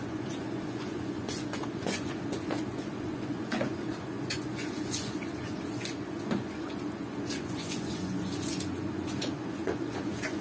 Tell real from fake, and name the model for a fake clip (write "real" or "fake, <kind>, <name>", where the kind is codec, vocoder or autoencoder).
fake, vocoder, Vocos